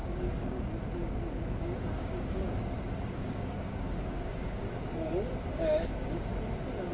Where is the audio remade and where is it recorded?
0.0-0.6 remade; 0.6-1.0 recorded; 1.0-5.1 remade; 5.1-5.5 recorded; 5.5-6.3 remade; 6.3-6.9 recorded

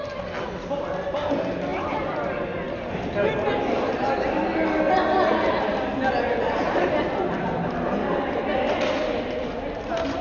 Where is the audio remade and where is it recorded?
0.0-10.2 recorded

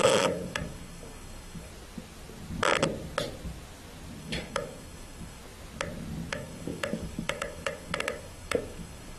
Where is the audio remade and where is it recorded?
0.0-1.7 remade; 1.7-4.2 recorded; 4.2-5.4 remade; 5.4-6.3 recorded; 6.3-9.2 remade

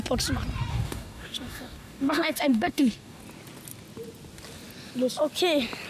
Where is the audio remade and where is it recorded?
0.0-0.7 recorded; 0.7-3.2 remade; 3.2-5.9 recorded

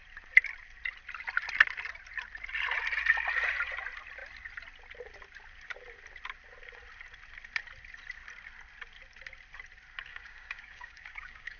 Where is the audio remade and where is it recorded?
0.0-10.1 recorded; 10.1-11.6 remade

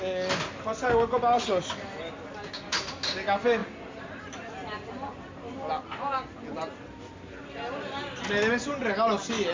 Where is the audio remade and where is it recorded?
0.0-9.5 recorded